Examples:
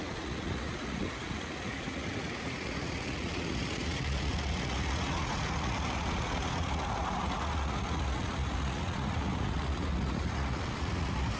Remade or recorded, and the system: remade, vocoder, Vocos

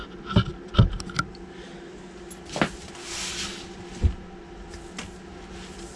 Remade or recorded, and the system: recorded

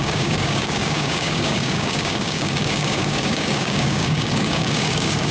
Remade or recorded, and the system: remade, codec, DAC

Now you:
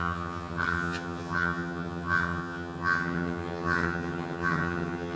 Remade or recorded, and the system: remade, vocoder, HiFi-GAN